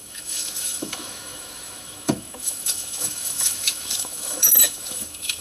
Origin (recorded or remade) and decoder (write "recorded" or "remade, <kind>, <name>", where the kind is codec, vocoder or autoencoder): remade, autoencoder, DAC-VAE